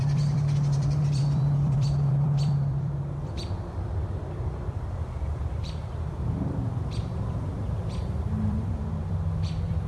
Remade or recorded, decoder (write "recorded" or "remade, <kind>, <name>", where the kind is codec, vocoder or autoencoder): remade, vocoder, BigVGAN v2